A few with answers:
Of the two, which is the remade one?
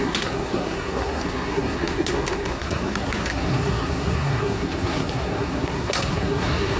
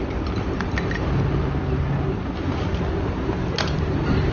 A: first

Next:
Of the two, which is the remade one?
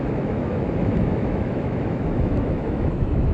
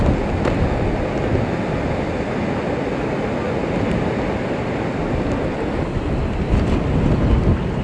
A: first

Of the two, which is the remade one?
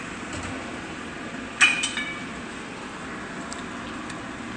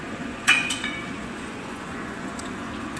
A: second